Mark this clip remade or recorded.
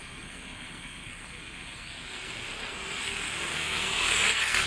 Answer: remade